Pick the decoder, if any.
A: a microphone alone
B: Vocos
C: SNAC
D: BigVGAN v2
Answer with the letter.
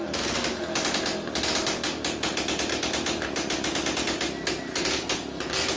A